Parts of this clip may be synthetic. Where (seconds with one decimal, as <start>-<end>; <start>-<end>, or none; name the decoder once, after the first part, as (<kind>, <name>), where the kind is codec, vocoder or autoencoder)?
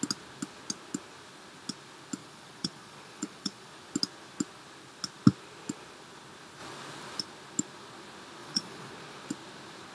2.2-3.7 (vocoder, Vocos); 8.4-8.9